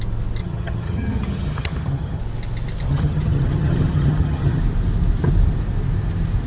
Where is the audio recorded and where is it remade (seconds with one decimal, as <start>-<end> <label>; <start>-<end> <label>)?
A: 0.0-0.4 recorded; 0.4-2.2 remade; 2.2-2.9 recorded; 2.9-4.6 remade; 4.6-6.5 recorded